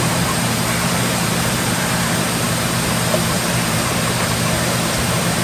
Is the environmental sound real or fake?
fake